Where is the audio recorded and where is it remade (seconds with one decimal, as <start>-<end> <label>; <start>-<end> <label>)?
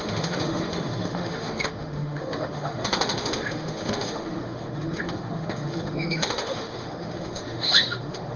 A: 0.0-8.4 remade